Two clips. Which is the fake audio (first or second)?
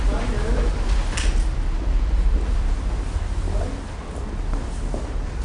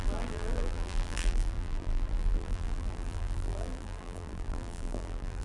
second